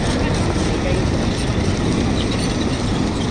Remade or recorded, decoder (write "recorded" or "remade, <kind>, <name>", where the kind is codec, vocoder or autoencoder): recorded